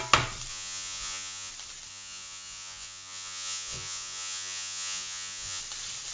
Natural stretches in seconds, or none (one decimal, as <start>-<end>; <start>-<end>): 0.0-0.5; 1.5-1.9; 5.6-6.1